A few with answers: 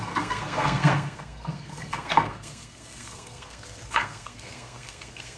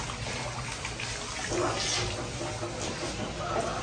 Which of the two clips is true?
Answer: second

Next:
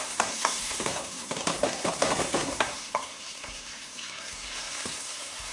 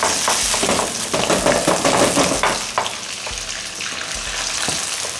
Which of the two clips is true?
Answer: second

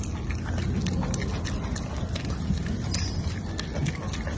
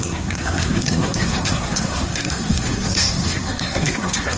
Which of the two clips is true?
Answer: first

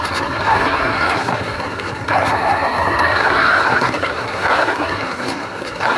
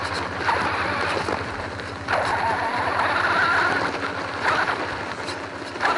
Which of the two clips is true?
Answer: second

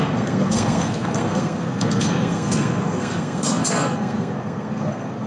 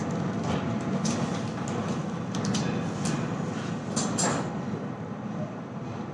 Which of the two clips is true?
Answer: second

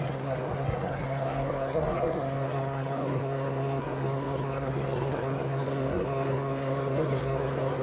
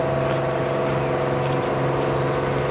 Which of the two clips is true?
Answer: second